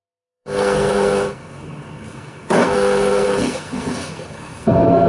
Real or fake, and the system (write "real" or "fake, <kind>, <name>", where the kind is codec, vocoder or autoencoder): fake, codec, SNAC